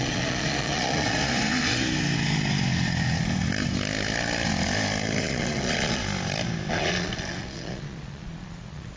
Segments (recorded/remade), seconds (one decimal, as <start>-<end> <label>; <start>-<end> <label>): 0.0-1.2 remade; 1.2-5.2 recorded; 5.2-6.0 remade; 6.0-6.7 recorded; 6.7-9.0 remade